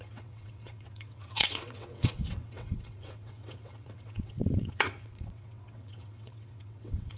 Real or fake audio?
fake